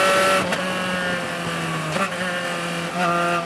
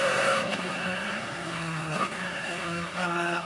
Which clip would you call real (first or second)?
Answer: first